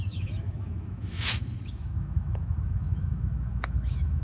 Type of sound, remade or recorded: remade